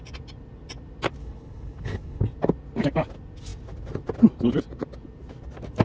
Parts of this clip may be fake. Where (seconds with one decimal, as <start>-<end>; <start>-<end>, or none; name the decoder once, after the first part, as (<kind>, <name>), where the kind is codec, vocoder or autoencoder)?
1.2-2.2 (codec, HILCodec)